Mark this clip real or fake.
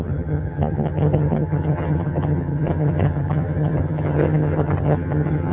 fake